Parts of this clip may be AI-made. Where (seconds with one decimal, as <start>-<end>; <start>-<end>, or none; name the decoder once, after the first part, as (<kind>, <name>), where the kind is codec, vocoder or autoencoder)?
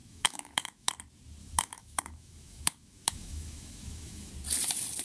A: 0.0-0.9 (autoencoder, DAC-VAE); 1.4-4.3